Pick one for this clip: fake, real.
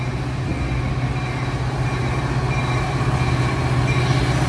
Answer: real